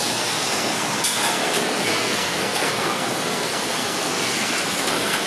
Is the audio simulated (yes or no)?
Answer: yes